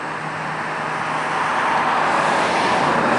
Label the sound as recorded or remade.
recorded